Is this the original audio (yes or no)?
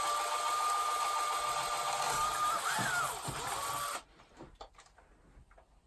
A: yes